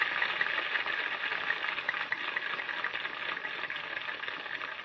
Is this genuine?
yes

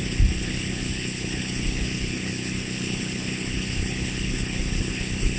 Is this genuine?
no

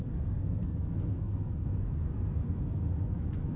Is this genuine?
no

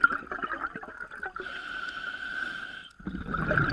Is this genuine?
yes